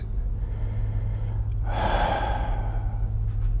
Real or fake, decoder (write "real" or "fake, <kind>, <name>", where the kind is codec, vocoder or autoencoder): real